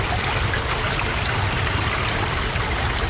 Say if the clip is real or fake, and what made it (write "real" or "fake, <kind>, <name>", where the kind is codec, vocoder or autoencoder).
real